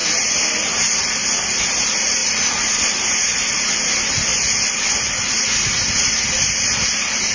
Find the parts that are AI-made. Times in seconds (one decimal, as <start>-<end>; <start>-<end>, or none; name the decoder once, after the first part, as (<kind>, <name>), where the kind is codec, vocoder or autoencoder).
none